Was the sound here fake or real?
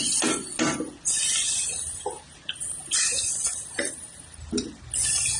real